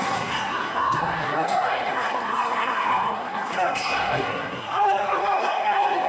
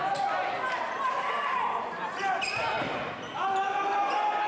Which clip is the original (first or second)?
second